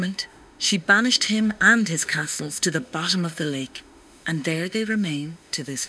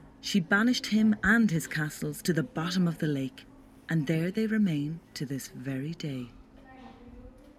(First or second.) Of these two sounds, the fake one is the first